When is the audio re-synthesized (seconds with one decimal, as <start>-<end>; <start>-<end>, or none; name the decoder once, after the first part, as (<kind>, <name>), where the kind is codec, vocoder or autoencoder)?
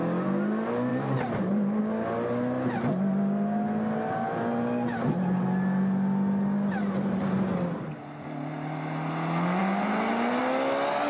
0.9-1.8 (vocoder, BigVGAN v2)